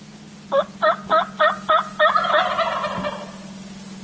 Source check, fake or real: real